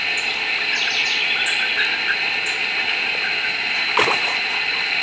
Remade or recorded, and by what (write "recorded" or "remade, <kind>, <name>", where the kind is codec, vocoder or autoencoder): recorded